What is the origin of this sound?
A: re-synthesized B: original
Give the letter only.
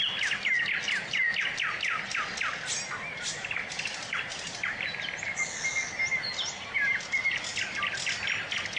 B